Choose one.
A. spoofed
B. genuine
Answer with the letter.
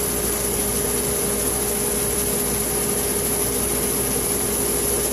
B